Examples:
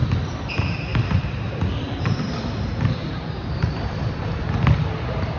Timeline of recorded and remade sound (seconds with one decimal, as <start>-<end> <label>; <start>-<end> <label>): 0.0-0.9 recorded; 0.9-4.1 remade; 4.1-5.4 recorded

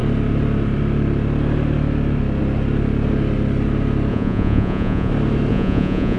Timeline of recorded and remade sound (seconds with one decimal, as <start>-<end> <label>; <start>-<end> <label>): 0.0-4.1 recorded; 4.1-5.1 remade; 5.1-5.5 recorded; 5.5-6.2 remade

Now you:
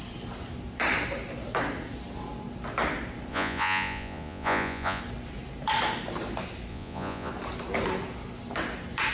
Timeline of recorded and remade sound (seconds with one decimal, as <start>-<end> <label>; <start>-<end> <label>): 0.0-3.3 recorded; 3.3-5.0 remade; 5.0-6.7 recorded; 6.7-7.3 remade; 7.3-9.1 recorded

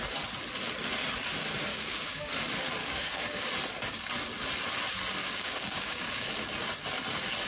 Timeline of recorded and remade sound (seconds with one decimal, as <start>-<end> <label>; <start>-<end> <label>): 0.0-1.7 recorded; 1.7-2.3 remade; 2.3-2.8 recorded; 2.8-3.5 remade; 3.5-5.2 recorded; 5.2-6.3 remade; 6.3-7.5 recorded